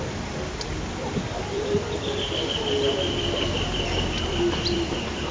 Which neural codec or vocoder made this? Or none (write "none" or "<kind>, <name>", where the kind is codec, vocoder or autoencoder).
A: vocoder, BigVGAN v2